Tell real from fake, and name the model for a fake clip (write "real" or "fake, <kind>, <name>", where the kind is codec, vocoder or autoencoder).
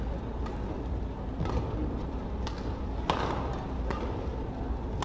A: real